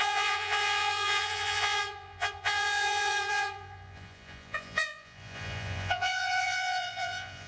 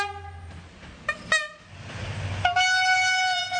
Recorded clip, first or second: second